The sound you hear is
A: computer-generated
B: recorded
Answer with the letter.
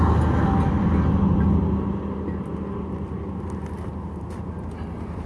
B